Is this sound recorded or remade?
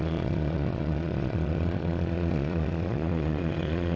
remade